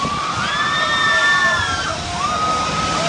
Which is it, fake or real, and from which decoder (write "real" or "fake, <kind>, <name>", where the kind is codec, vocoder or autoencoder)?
real